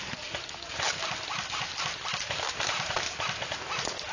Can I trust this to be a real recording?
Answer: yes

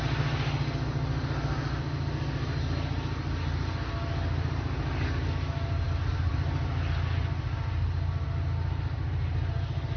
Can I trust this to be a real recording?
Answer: yes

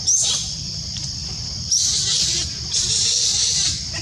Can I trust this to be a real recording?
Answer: no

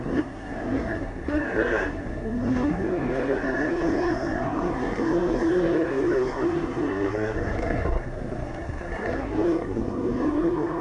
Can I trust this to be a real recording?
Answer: no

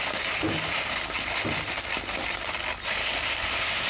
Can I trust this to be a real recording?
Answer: yes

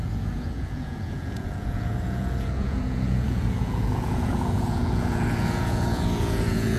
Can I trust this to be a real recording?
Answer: no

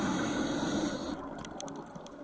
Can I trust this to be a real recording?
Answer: yes